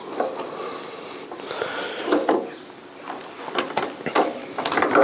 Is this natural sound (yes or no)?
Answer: yes